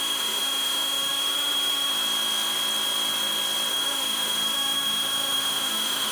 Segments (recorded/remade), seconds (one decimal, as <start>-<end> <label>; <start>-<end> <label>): 0.0-1.9 remade; 1.9-3.7 recorded; 3.7-6.1 remade